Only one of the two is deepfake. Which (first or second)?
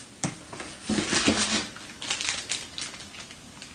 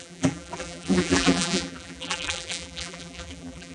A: second